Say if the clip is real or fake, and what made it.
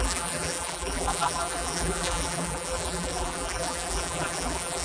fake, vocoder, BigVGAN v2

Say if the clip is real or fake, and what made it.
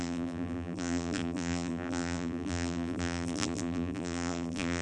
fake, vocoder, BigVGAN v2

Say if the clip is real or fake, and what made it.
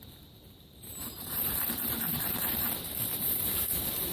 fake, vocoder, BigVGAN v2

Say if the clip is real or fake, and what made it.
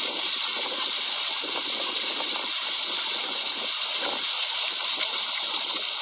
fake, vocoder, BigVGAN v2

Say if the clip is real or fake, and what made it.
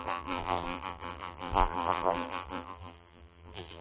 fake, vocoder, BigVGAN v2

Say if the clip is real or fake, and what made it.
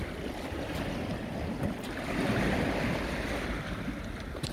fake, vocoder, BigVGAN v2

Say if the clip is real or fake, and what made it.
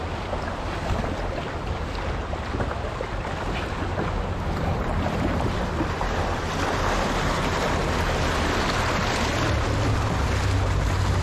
real